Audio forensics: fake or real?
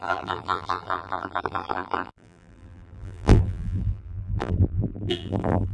fake